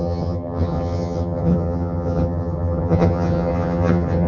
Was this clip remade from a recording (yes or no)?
yes